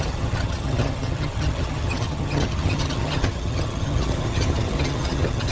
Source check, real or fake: fake